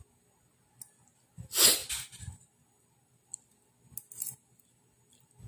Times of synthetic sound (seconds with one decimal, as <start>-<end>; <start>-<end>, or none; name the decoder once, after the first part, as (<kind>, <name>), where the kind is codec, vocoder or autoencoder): none